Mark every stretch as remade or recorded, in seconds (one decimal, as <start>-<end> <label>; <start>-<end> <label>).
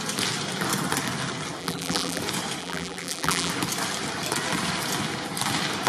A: 0.0-1.6 recorded; 1.6-2.2 remade; 2.2-2.6 recorded; 2.6-3.5 remade; 3.5-5.9 recorded